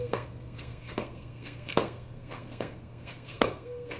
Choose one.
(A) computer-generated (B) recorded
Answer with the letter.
A